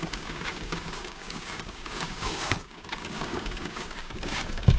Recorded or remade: remade